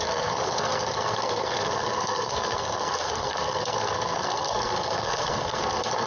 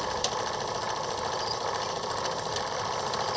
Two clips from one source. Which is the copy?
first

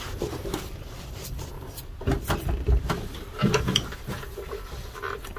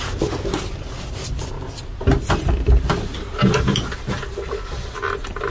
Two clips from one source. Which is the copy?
first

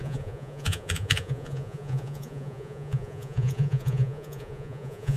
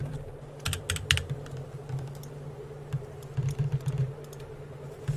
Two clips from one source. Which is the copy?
first